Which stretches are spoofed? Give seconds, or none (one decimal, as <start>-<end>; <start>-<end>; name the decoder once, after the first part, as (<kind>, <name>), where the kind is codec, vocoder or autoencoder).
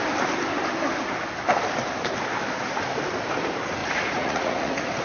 3.8-5.0 (vocoder, Vocos)